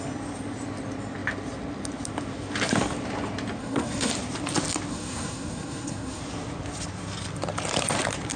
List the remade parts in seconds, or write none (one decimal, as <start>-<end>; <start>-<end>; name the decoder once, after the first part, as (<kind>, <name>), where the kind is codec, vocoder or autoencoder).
3.6-4.1 (codec, SNAC); 4.9-6.2

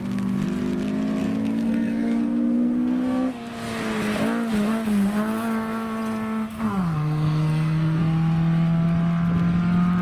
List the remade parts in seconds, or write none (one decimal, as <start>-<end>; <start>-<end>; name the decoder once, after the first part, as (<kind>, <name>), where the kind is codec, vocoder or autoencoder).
1.2-3.3 (codec, SNAC); 6.6-8.0